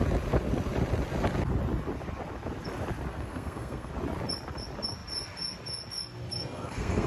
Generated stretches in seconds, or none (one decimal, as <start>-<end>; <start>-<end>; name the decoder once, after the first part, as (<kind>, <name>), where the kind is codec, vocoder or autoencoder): 3.1-3.9 (codec, SNAC); 6.4-7.1